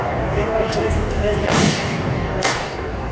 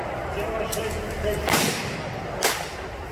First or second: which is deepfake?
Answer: first